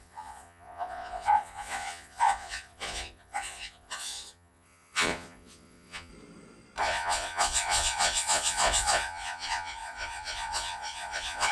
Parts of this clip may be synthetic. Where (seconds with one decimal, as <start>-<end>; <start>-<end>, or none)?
0.0-6.1; 6.8-11.5